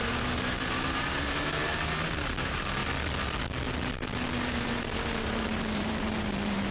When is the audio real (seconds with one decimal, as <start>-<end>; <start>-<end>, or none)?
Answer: 2.8-4.4